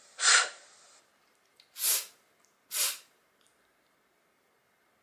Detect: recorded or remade recorded